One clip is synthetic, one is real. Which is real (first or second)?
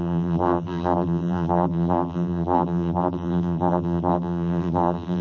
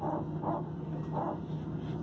second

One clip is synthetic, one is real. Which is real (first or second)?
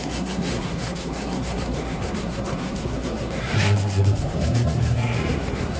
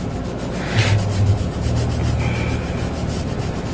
second